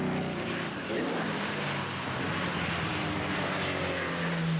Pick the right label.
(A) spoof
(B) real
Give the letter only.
B